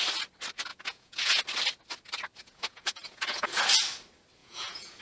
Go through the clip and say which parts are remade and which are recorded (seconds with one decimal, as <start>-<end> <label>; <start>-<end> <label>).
0.0-0.7 recorded; 0.7-1.4 remade; 1.4-2.4 recorded; 2.4-3.6 remade; 3.6-4.4 recorded; 4.4-5.0 remade